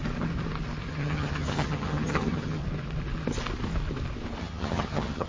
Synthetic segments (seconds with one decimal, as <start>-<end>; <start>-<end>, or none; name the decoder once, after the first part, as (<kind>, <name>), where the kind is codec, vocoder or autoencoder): 0.9-2.6 (vocoder, HiFi-GAN); 4.4-5.3